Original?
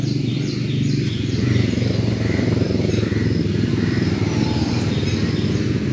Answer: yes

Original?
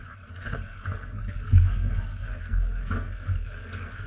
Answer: no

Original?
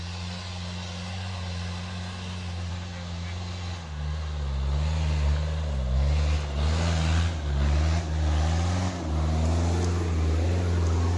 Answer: yes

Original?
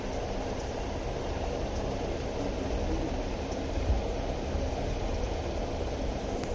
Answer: yes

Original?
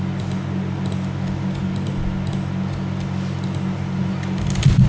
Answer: yes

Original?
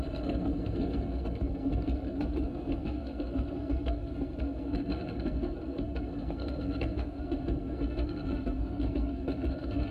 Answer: no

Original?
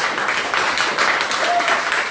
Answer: yes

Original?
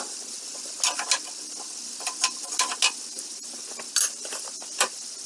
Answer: yes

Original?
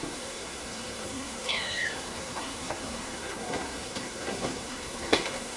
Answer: no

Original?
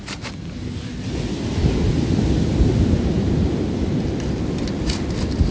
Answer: yes